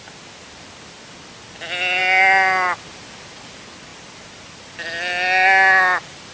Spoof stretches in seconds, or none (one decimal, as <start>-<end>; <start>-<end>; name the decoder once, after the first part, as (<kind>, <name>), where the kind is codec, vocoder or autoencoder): none